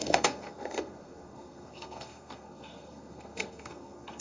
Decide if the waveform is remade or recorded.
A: remade